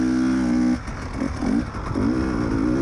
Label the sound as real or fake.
real